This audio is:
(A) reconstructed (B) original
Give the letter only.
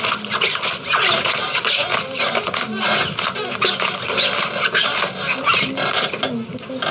B